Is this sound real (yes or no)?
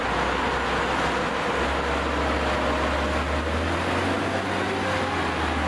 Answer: yes